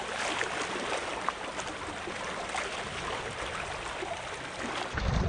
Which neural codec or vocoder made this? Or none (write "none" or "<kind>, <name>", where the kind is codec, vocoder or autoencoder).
none